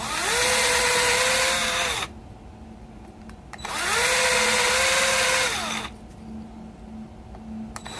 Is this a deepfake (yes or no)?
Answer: yes